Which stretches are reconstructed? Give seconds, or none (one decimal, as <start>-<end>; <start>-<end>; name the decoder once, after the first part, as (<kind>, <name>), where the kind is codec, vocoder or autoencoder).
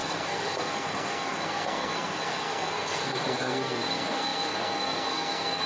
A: 0.0-5.7 (codec, SNAC)